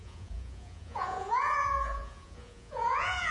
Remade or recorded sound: remade